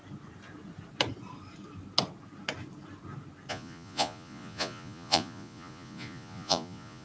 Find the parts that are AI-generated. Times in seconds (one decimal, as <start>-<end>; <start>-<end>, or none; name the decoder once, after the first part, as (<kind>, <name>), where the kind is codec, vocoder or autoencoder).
3.5-7.0 (vocoder, Vocos)